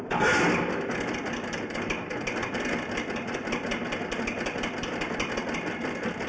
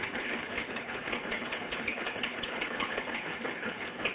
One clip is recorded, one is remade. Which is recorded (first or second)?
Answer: first